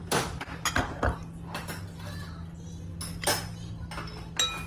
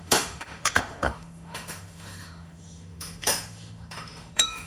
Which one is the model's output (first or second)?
second